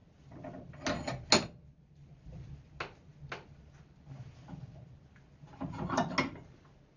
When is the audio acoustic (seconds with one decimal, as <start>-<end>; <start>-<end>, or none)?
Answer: 0.0-7.0

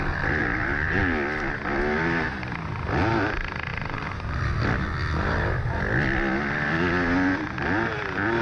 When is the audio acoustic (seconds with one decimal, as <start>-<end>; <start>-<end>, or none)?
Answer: 0.0-0.4; 1.0-3.7; 4.6-8.4

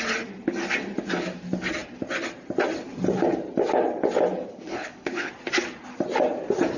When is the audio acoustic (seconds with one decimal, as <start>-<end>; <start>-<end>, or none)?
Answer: 0.0-4.5; 5.3-6.8

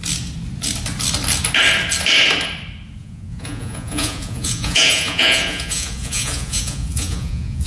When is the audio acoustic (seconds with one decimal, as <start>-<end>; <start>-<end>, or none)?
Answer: 0.0-3.0